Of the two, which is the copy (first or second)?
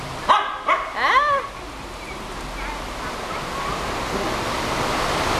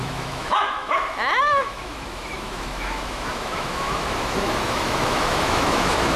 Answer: second